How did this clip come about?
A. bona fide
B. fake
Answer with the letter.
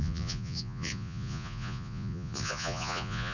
B